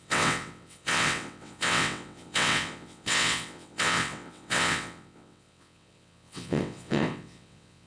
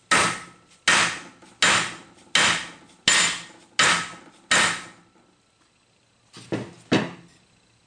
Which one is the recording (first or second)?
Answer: second